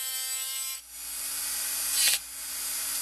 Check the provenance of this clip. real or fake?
real